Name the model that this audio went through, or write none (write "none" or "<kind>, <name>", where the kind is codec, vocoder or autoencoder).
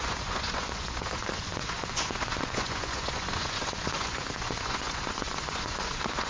vocoder, Vocos